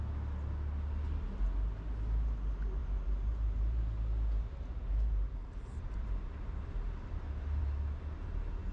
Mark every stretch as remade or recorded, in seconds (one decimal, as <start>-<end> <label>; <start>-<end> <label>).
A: 0.0-2.8 recorded; 2.8-3.8 remade; 3.8-5.4 recorded; 5.4-7.6 remade; 7.6-8.7 recorded